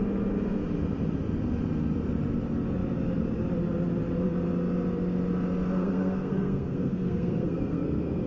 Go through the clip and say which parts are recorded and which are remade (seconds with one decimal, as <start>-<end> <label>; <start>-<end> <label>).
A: 0.0-5.8 recorded; 5.8-8.3 remade